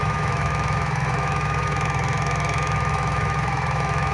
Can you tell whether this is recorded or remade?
remade